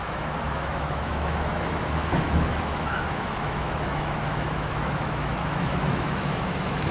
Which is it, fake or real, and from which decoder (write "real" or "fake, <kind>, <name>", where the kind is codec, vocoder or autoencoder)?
fake, autoencoder, DAC-VAE